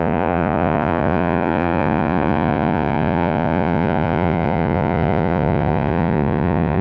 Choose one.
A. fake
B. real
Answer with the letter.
A